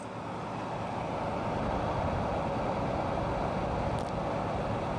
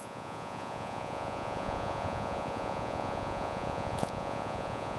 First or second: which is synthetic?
second